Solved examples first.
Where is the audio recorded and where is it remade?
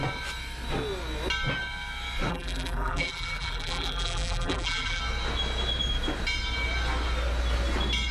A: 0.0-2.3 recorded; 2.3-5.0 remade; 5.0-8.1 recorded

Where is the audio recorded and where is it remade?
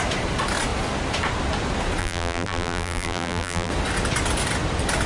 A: 0.0-2.0 recorded; 2.0-3.7 remade; 3.7-5.1 recorded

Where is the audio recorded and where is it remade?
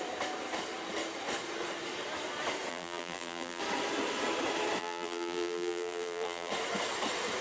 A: 0.0-2.7 recorded; 2.7-3.6 remade; 3.6-4.8 recorded; 4.8-6.5 remade; 6.5-7.4 recorded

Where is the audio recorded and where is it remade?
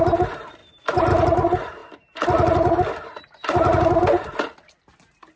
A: 0.0-5.4 recorded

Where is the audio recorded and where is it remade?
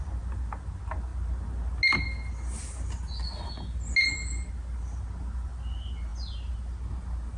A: 0.0-7.4 recorded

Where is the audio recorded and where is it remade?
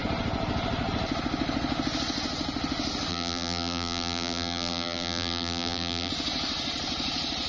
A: 0.0-3.1 recorded; 3.1-6.1 remade; 6.1-7.5 recorded